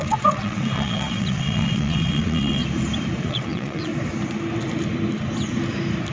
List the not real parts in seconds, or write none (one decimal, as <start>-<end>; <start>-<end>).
0.0-2.6; 3.2-3.9